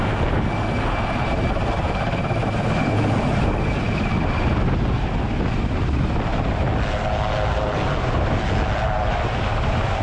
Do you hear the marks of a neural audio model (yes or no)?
no